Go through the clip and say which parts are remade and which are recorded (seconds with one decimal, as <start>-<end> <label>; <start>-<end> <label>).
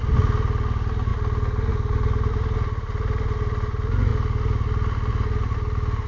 0.0-6.1 recorded